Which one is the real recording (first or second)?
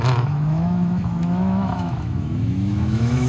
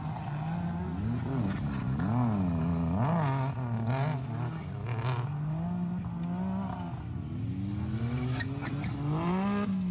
second